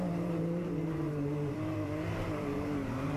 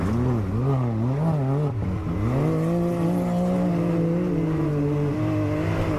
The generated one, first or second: first